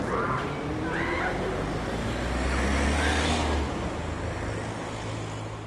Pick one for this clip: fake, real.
real